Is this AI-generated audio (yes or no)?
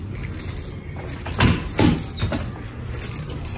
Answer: no